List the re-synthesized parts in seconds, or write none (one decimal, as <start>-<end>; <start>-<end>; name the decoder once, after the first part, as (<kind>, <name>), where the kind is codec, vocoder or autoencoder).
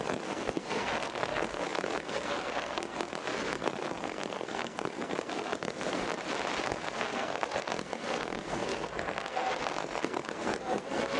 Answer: 0.0-6.0 (codec, SNAC); 6.6-11.2